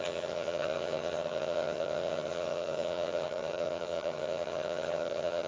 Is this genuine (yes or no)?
no